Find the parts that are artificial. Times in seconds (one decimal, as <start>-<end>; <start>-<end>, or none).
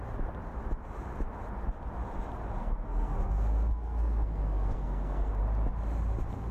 2.6-5.4